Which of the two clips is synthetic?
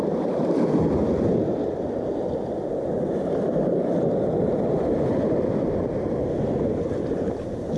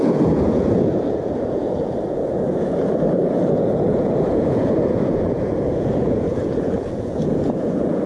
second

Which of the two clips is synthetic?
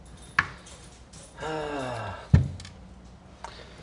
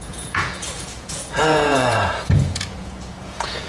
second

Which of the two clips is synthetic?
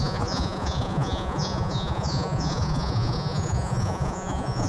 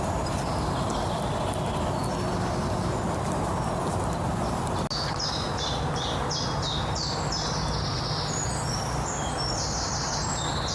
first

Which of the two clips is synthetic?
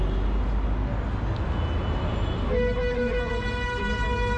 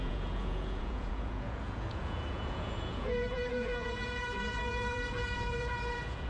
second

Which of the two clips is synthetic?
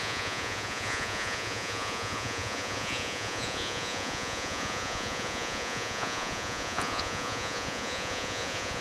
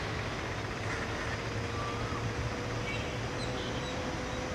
first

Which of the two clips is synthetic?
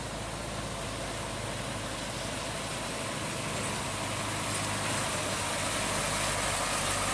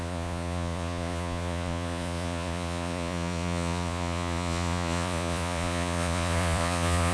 second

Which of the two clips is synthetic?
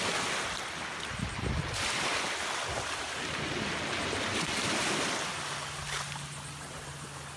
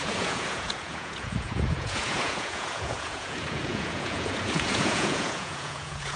second